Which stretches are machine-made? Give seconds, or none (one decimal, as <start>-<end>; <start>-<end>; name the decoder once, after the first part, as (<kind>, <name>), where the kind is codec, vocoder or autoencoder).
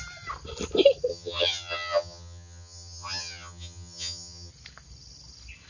1.1-4.5 (vocoder, HiFi-GAN)